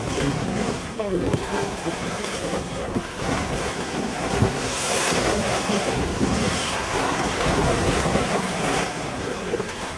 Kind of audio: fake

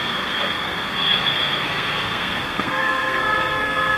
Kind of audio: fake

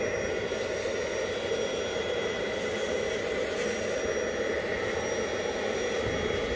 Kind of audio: real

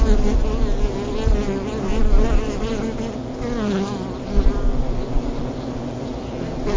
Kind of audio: real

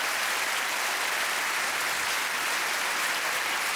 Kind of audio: real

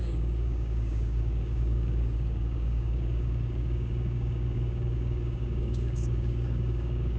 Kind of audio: fake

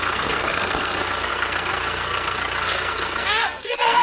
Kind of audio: fake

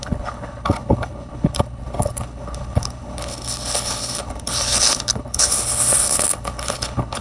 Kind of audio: fake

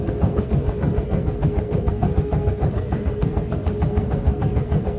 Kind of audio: fake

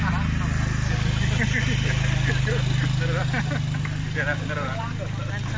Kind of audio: real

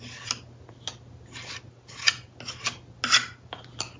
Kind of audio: real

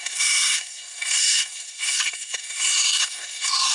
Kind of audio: fake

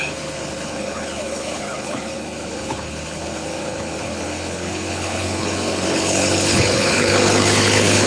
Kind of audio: fake